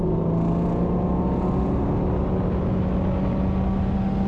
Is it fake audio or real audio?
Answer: real